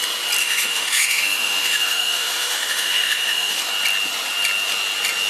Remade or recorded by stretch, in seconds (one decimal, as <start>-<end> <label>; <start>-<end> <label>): 0.0-0.4 recorded; 0.4-3.6 remade; 3.6-5.3 recorded